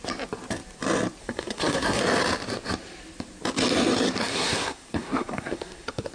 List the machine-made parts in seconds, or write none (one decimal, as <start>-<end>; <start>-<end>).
1.2-2.0; 4.2-6.1